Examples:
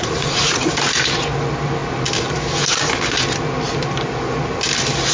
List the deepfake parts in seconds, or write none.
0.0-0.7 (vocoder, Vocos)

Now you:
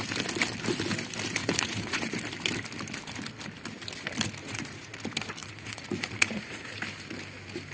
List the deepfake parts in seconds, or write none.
1.4-2.1 (vocoder, Vocos); 4.4-4.9; 5.4-6.8

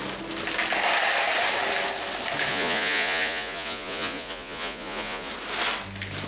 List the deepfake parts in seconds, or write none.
2.5-5.3 (vocoder, Vocos)

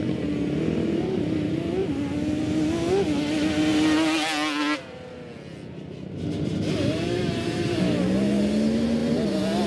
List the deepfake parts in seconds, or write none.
none

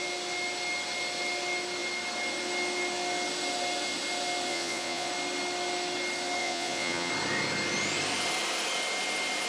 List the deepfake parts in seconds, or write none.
4.5-5.1 (vocoder, Vocos); 6.4-7.1